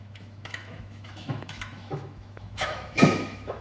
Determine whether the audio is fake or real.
fake